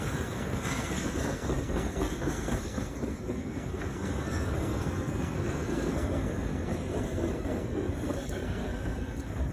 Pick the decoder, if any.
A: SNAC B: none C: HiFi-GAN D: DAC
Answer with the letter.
A